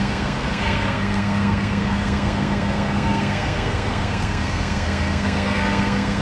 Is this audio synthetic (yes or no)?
yes